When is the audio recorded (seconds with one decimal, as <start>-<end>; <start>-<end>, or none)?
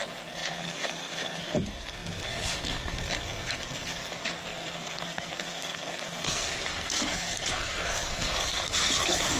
none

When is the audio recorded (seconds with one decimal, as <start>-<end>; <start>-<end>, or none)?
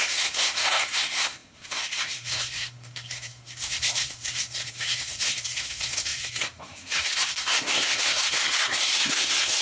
none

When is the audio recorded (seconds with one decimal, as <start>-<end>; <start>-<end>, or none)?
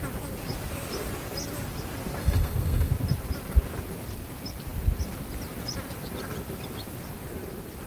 0.0-2.2; 2.9-7.9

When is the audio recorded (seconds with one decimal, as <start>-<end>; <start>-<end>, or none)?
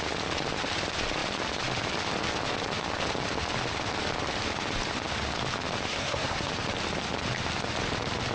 0.0-5.9; 6.5-8.3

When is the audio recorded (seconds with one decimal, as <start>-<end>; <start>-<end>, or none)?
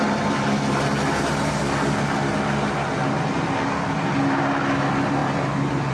0.0-5.9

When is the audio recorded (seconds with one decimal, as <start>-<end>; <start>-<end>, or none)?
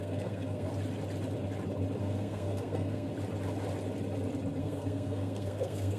0.7-2.0; 3.1-4.6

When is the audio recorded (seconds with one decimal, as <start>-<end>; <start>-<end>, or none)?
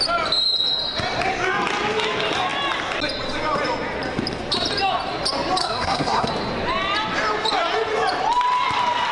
0.0-5.6; 6.3-9.1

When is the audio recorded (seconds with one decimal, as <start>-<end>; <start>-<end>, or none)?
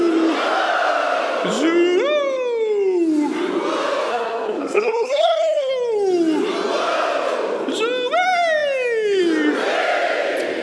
0.0-4.1; 5.7-10.6